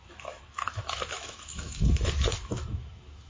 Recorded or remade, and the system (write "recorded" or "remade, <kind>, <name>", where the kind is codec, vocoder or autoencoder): remade, autoencoder, DAC-VAE